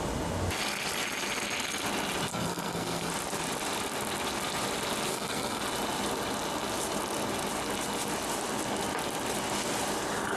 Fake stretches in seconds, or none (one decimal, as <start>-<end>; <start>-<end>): 2.3-3.1; 5.1-5.6